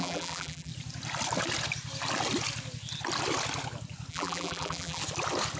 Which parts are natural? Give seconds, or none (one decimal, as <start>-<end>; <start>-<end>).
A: 0.7-4.1; 5.0-5.6

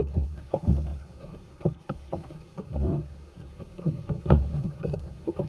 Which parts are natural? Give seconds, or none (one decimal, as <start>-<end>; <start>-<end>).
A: none

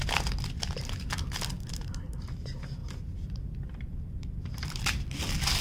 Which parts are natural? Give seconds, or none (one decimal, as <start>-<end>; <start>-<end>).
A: 0.0-2.8

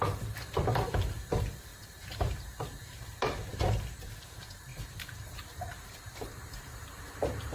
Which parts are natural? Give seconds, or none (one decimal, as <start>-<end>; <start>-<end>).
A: none

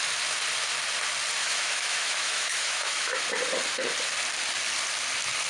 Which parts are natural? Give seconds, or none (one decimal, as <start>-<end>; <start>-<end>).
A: 0.0-1.4; 3.2-5.5

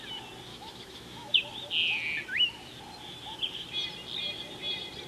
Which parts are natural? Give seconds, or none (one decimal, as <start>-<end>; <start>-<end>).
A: 0.0-0.5; 1.3-5.1

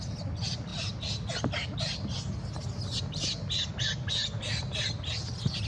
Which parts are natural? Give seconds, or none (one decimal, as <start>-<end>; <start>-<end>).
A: 0.0-5.7

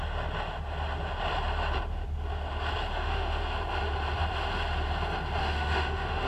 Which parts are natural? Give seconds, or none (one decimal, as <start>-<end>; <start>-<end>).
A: 0.0-2.9; 3.4-5.4